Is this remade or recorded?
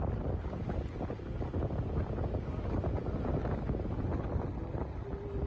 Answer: recorded